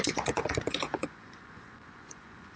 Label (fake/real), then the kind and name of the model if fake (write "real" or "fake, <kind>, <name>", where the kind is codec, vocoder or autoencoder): fake, vocoder, Vocos